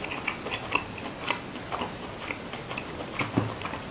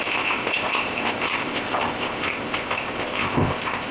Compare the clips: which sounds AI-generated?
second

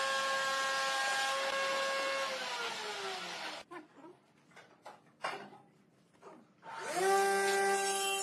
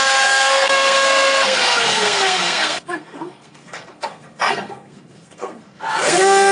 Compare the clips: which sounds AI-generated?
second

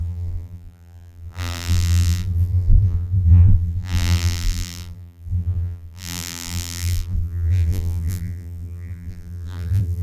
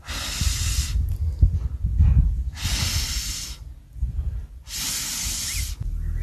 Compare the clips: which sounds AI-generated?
first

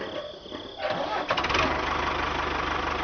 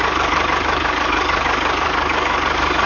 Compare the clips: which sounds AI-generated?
second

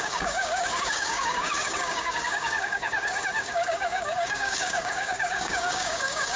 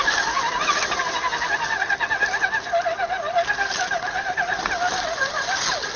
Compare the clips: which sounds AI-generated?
first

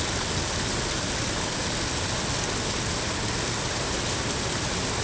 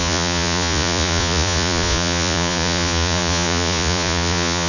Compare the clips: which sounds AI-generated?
second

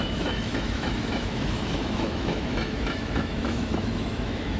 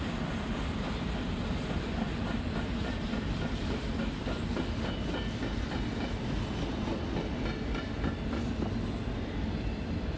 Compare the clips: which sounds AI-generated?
first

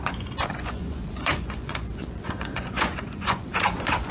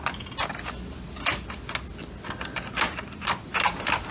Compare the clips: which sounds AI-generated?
first